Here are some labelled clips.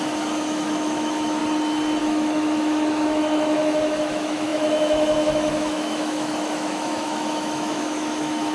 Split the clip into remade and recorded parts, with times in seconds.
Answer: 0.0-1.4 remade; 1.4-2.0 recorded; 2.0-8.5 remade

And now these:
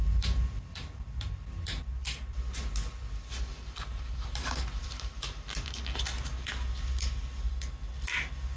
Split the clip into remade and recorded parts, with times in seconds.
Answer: 0.0-3.5 recorded; 3.5-5.8 remade; 5.8-8.6 recorded

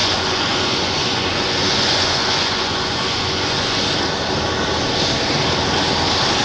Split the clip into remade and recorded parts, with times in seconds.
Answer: 0.0-3.8 remade; 3.8-6.4 recorded

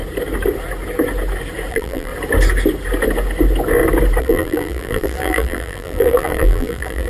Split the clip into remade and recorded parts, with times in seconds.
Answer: 0.0-1.7 recorded; 1.7-2.1 remade; 2.1-4.2 recorded; 4.2-7.1 remade

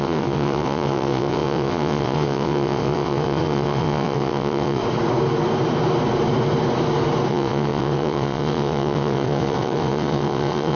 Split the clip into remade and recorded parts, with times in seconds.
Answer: 0.0-4.8 remade; 4.8-7.3 recorded; 7.3-10.8 remade

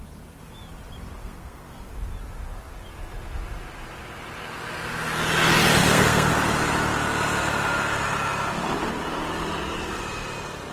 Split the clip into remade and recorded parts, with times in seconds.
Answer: 0.0-1.2 recorded; 1.2-1.9 remade; 1.9-5.8 recorded; 5.8-6.3 remade; 6.3-10.7 recorded

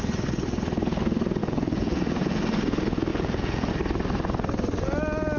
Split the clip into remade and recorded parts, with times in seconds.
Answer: 0.0-1.4 recorded; 1.4-2.4 remade; 2.4-3.1 recorded; 3.1-3.7 remade; 3.7-5.4 recorded